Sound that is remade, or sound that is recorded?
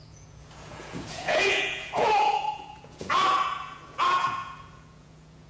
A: remade